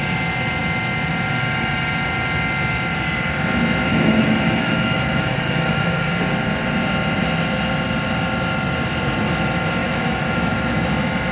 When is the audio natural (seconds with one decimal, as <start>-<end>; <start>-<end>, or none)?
0.0-3.9; 6.1-9.8; 10.9-11.3